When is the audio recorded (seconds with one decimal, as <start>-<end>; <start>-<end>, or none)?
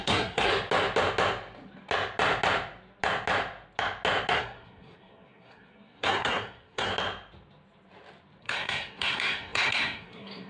0.5-4.3; 6.9-8.4